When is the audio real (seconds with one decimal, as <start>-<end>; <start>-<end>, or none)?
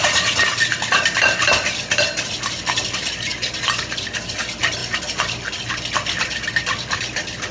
0.0-7.5